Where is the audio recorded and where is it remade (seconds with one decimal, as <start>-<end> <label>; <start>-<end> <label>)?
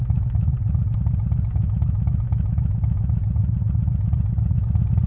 0.0-0.5 remade; 0.5-1.5 recorded; 1.5-3.2 remade; 3.2-5.1 recorded